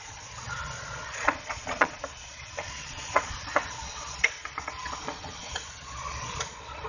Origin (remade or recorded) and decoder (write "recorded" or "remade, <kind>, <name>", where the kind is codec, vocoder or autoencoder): remade, vocoder, Vocos